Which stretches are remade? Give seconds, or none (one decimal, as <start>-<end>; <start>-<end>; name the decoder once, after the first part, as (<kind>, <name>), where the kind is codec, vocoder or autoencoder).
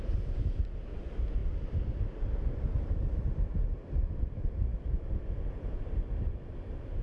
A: none